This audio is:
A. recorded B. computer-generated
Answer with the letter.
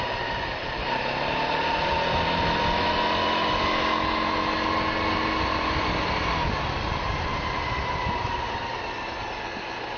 A